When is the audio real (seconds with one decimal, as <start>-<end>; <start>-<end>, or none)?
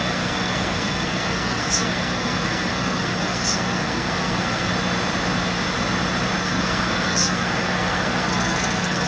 4.7-6.4